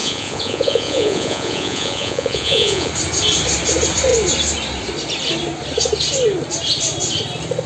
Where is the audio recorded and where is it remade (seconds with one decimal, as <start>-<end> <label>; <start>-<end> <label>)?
0.0-2.9 remade; 2.9-7.7 recorded